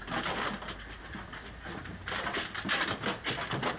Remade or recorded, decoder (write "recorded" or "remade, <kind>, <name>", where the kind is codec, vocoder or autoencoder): recorded